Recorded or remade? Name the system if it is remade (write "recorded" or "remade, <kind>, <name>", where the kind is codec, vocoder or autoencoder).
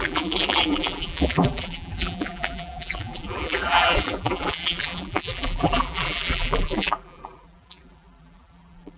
remade, vocoder, BigVGAN v2